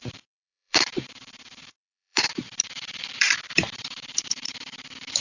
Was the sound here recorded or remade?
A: remade